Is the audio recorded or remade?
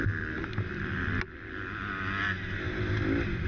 recorded